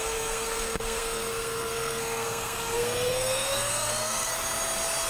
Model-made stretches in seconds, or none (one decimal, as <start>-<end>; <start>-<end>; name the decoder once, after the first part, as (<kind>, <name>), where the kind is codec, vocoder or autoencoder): 0.0-4.3 (codec, SNAC)